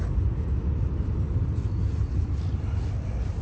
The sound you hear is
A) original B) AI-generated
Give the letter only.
A